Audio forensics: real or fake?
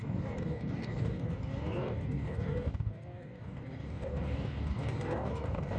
fake